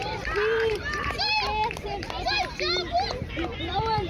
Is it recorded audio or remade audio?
remade